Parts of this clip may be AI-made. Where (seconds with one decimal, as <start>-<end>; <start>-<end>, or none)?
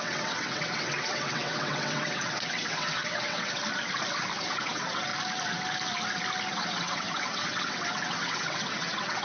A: 0.0-3.6; 4.4-5.1; 6.5-9.2